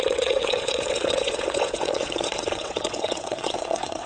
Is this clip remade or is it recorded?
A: remade